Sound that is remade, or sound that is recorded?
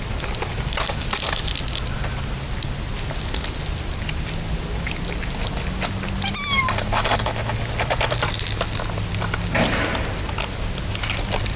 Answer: recorded